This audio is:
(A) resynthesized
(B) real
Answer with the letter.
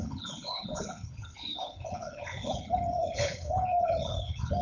A